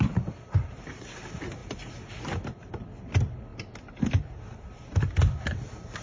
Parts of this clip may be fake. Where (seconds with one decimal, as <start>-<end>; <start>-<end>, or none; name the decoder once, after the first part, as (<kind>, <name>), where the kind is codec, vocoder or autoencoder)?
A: none